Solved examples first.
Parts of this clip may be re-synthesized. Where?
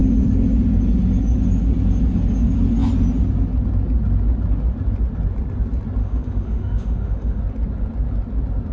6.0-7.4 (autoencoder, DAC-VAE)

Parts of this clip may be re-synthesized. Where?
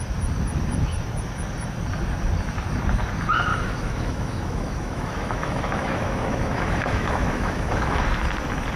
3.5-8.0 (autoencoder, DAC-VAE)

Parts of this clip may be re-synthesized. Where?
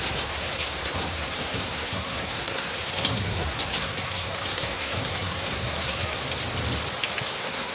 0.0-6.2 (codec, SNAC); 7.2-7.7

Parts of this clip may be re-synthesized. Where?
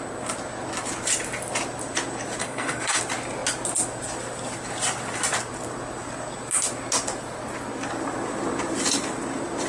2.4-3.0 (codec, SNAC)